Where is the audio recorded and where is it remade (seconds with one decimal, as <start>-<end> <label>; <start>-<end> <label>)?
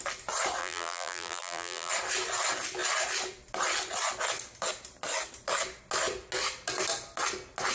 0.0-0.6 recorded; 0.6-1.9 remade; 1.9-7.7 recorded